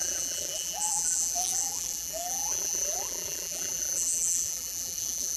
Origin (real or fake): fake